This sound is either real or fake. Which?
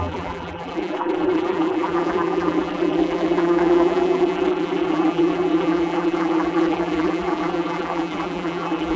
fake